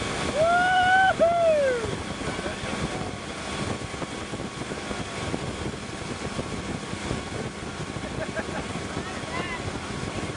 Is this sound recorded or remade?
recorded